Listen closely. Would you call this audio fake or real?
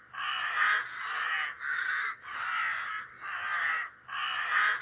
real